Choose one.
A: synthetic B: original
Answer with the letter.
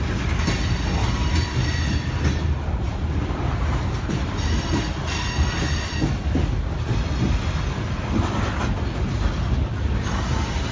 B